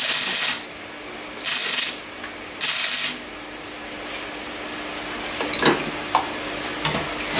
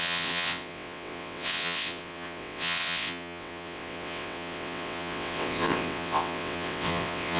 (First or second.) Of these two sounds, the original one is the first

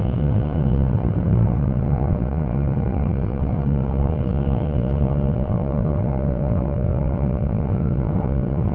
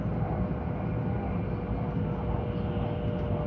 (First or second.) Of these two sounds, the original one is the second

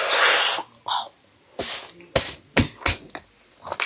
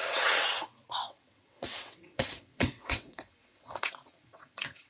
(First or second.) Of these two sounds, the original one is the first